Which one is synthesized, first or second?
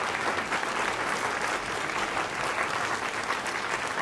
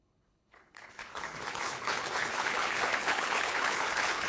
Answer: second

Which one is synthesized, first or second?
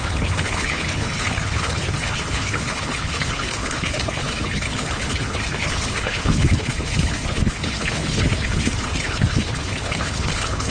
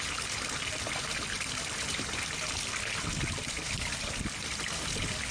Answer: first